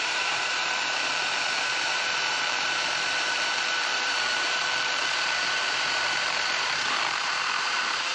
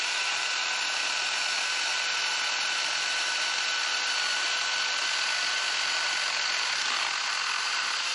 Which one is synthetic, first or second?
first